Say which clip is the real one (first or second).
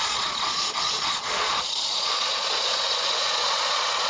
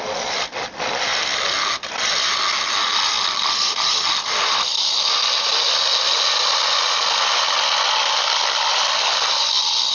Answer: second